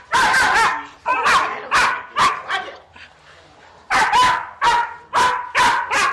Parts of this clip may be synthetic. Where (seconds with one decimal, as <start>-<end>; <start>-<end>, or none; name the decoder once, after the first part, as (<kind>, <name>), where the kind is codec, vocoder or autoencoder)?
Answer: none